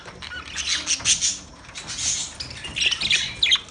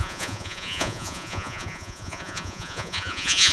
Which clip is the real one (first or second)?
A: first